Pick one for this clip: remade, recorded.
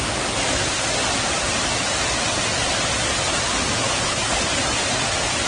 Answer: recorded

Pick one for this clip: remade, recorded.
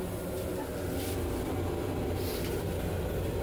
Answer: recorded